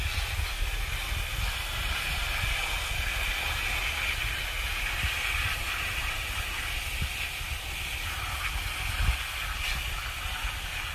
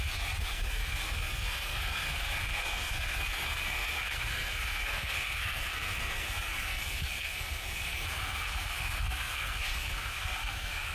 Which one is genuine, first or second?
first